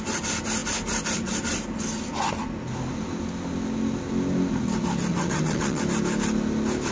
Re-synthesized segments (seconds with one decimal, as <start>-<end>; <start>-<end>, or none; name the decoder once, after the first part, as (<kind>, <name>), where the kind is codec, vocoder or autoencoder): 5.1-5.8 (vocoder, WaveNeXt)